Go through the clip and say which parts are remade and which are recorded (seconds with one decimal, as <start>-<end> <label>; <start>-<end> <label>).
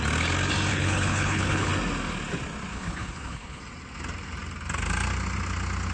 0.0-0.7 recorded; 0.7-1.7 remade; 1.7-2.7 recorded; 2.7-3.6 remade; 3.6-5.9 recorded